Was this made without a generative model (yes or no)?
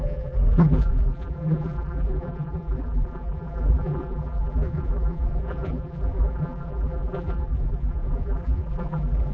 no